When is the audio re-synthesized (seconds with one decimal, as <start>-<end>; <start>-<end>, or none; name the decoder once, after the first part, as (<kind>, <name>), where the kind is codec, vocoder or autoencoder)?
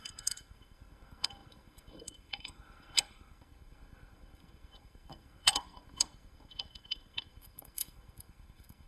0.0-8.9 (codec, SNAC)